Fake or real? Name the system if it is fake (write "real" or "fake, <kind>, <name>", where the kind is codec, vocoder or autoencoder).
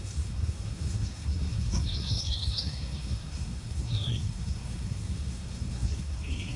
fake, codec, SNAC